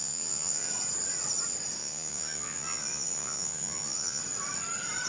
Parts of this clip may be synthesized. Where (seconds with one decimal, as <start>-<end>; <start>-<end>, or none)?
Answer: 0.0-0.7; 1.8-4.2